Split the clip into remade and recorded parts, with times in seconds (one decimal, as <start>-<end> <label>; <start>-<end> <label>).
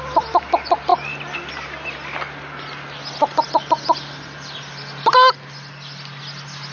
0.0-6.7 recorded